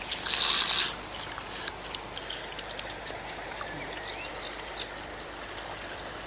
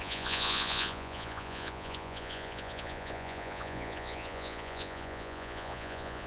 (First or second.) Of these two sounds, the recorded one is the first